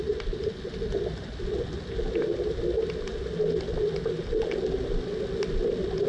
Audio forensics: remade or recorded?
recorded